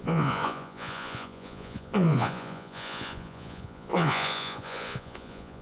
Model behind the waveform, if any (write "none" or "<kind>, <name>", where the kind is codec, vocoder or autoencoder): vocoder, Vocos